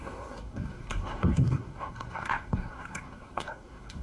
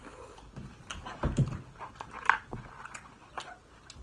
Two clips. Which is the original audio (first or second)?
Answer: second